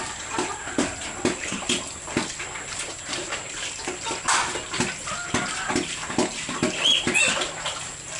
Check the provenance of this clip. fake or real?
real